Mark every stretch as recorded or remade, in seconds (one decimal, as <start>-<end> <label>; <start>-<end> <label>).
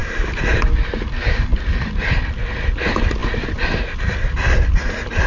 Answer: 0.0-1.5 recorded; 1.5-2.2 remade; 2.2-5.3 recorded